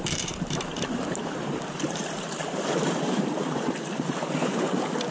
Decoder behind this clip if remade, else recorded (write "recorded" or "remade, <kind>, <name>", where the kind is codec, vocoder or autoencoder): remade, vocoder, BigVGAN v2